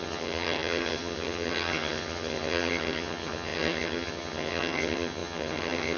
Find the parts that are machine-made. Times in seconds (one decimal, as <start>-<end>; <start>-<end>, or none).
0.0-6.0